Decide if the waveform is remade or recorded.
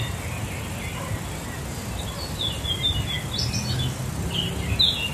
recorded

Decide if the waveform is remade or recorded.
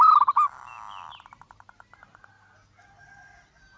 recorded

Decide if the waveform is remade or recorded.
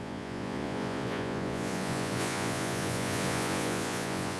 remade